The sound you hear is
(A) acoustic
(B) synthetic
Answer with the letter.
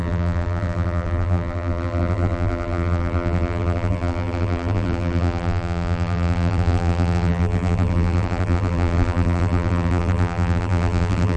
B